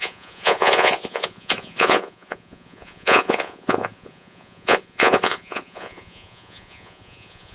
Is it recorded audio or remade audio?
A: remade